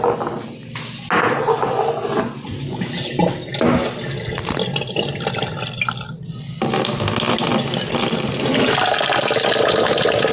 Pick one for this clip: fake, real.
real